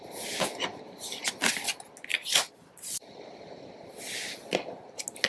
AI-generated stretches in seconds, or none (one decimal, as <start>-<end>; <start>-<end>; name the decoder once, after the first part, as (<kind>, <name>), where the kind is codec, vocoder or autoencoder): 0.7-1.2 (vocoder, BigVGAN v2); 2.1-3.7